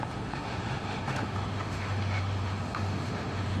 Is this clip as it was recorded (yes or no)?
no